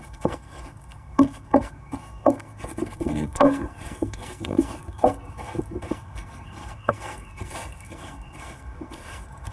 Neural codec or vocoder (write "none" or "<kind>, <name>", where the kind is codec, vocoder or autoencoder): codec, SNAC